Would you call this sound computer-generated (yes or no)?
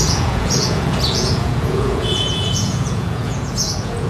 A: yes